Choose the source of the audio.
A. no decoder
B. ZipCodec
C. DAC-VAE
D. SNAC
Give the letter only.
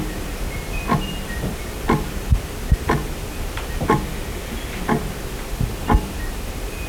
A